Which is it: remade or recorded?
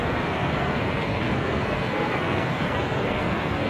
remade